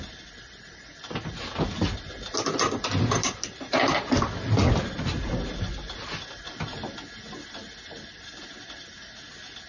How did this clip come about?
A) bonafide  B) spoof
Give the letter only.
A